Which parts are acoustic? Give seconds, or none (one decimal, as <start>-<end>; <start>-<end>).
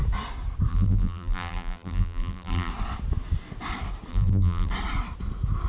0.0-0.7; 2.7-4.1; 4.7-5.7